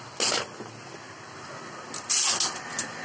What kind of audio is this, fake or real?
real